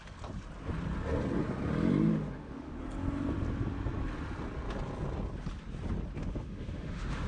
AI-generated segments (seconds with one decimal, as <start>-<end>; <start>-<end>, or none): 2.1-2.8; 6.2-7.3